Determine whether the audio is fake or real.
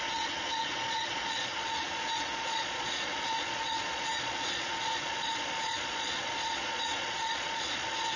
fake